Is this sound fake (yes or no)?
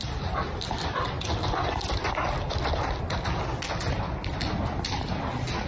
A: no